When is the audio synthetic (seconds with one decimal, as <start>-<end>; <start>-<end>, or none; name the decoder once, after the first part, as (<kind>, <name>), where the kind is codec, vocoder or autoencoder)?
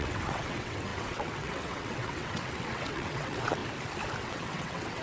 0.0-3.6 (vocoder, WaveNeXt); 4.2-5.0